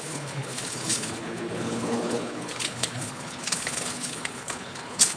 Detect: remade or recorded remade